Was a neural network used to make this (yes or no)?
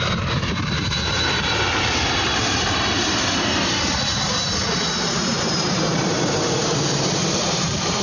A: yes